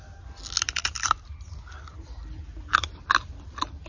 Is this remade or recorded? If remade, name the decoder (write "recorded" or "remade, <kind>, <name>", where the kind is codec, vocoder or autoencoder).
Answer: recorded